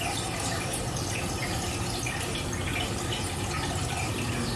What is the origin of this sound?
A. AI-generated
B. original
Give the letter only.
A